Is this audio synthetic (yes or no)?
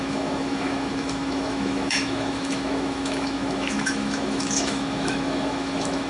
yes